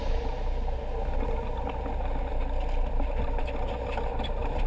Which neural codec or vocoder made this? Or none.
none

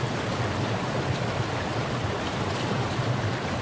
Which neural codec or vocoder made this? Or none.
none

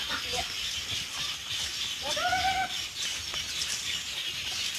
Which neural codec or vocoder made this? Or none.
none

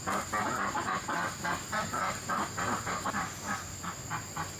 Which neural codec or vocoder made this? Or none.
none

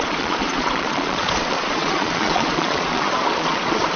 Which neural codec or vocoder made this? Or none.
vocoder, Vocos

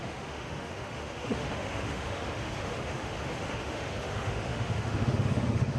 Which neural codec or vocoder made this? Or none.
autoencoder, DAC-VAE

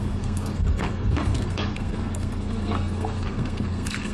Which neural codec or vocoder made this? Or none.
codec, SNAC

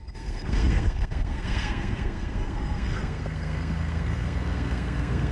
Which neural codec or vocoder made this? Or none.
codec, SNAC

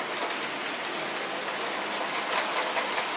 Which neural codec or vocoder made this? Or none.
none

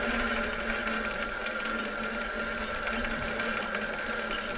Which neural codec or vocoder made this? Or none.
none